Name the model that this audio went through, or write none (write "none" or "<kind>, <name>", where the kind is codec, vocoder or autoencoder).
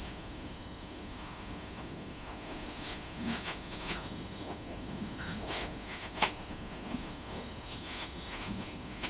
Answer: autoencoder, DAC-VAE